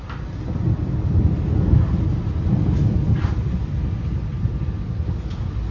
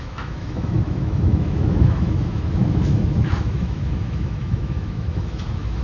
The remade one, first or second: second